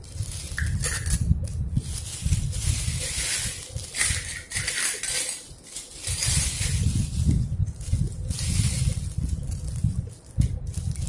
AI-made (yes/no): no